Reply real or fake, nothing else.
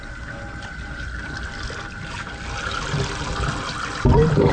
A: real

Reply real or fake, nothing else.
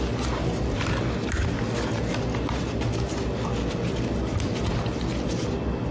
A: real